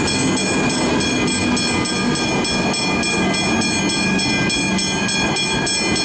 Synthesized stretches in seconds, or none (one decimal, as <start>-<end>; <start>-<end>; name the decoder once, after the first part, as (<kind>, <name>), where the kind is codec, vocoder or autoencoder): none

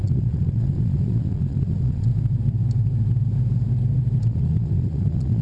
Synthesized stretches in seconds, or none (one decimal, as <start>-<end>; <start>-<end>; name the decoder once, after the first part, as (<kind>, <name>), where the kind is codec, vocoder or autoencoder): 0.0-2.1 (vocoder, Vocos); 4.2-5.4

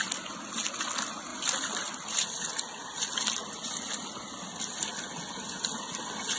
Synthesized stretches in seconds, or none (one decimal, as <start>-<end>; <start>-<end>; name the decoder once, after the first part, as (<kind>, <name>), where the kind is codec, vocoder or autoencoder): 1.3-3.0 (vocoder, BigVGAN v2); 3.4-5.1

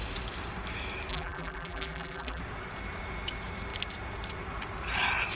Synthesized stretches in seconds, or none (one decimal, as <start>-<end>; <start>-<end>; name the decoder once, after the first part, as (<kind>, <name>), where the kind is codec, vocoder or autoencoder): 1.1-2.4 (vocoder, BigVGAN v2)

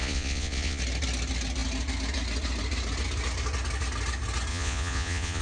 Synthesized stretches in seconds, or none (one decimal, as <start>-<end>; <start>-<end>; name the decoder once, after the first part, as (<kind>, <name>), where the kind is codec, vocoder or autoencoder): 0.0-0.8 (vocoder, Vocos); 4.5-5.4